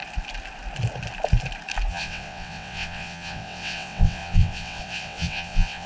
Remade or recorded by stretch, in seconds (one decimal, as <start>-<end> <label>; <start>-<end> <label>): 0.0-1.9 recorded; 1.9-5.9 remade